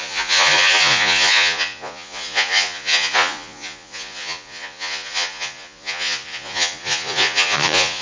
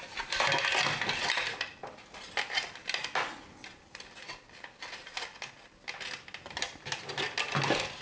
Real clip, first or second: second